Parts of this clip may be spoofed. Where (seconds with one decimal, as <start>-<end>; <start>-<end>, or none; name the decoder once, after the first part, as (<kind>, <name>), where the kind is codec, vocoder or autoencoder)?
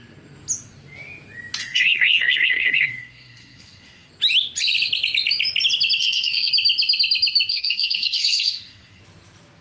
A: 1.6-4.1 (codec, SNAC); 6.0-6.5; 7.5-9.0